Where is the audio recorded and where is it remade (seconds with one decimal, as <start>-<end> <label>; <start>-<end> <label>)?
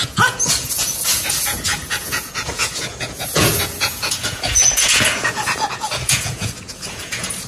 0.0-7.5 remade